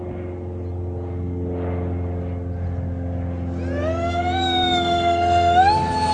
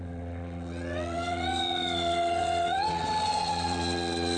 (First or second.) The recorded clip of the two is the first